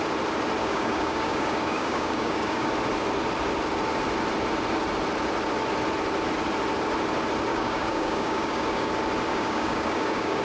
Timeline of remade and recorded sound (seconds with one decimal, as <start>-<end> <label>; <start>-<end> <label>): 0.0-0.6 recorded; 0.6-2.7 remade; 2.7-7.5 recorded; 7.5-8.9 remade; 8.9-9.3 recorded; 9.3-10.4 remade